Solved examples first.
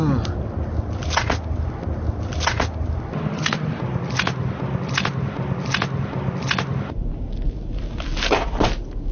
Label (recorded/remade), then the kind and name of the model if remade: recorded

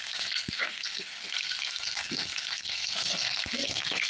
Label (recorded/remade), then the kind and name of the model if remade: remade, codec, SNAC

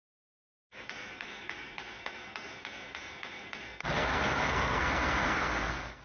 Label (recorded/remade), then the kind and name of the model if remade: remade, codec, SNAC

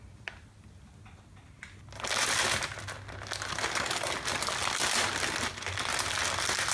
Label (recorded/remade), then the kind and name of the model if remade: recorded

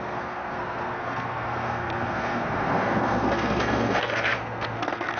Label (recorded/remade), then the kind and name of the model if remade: remade, codec, SNAC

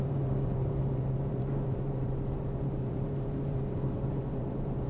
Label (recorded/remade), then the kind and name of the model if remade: remade, vocoder, BigVGAN v2